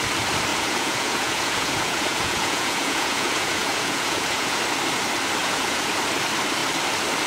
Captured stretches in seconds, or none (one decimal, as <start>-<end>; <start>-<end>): 0.0-0.5; 4.6-5.4; 6.0-7.3